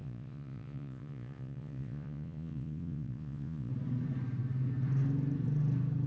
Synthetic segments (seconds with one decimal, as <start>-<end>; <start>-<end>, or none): 0.0-3.7